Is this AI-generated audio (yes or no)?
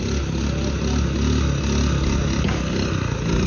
no